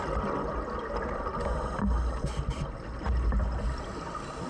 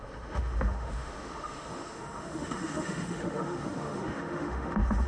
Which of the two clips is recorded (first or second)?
first